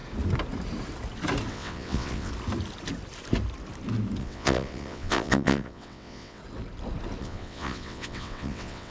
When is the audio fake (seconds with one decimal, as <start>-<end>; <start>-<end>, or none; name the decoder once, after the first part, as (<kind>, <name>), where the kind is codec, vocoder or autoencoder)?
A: 1.5-2.3 (vocoder, WaveNeXt); 4.2-6.4; 7.2-8.9